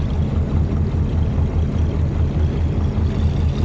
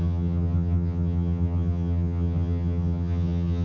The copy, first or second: second